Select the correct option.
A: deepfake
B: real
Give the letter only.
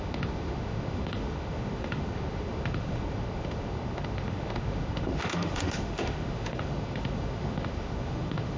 A